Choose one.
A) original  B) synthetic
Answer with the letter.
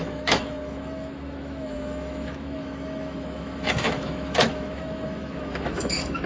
B